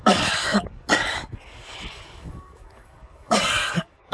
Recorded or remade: remade